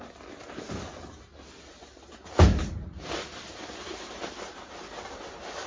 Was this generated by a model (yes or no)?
no